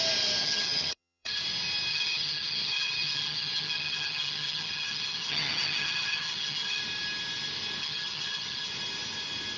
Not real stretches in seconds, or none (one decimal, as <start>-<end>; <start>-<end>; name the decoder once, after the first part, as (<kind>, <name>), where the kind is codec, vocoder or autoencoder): 0.4-1.4 (vocoder, HiFi-GAN); 1.9-6.8; 7.8-8.7